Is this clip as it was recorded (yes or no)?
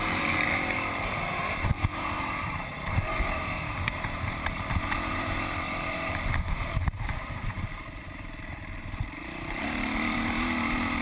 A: no